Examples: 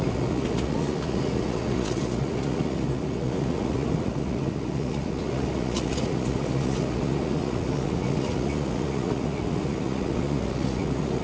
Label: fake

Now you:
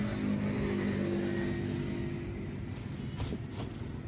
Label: real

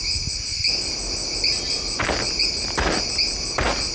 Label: real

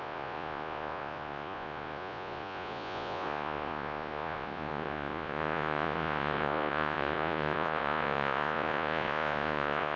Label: fake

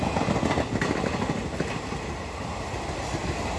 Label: real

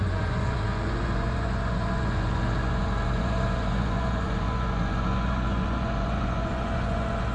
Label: fake